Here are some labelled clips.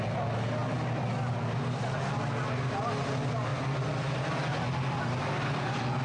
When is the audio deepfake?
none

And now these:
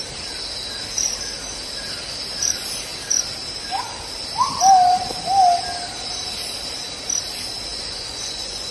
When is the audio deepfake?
7.7-8.7 (vocoder, Vocos)